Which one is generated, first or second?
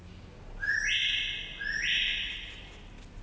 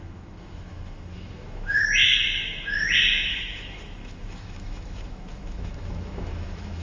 second